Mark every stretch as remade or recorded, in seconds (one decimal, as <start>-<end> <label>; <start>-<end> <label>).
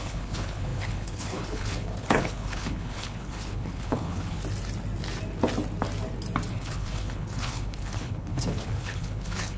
0.0-4.4 remade; 4.4-6.5 recorded; 6.5-9.6 remade